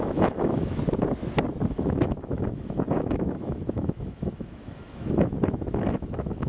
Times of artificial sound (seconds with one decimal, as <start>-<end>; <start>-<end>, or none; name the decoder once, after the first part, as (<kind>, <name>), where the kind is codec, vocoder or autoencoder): 0.0-0.8 (autoencoder, DAC-VAE); 1.7-6.5